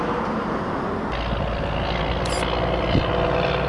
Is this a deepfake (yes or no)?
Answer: no